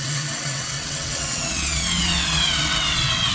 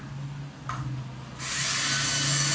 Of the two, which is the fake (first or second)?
first